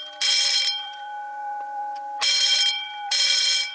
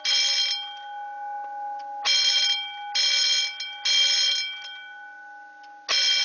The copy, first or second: first